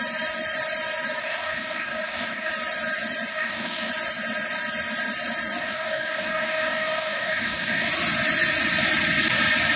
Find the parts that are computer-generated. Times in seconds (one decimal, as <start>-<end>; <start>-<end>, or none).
1.2-2.5; 3.3-3.9; 5.6-7.9